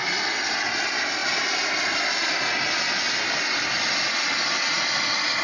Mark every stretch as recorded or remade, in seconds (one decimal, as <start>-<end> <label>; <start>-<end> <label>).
0.0-5.4 recorded